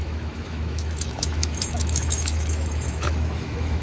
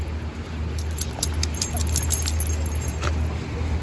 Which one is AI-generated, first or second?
first